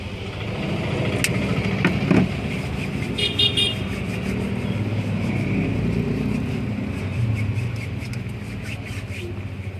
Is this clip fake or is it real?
real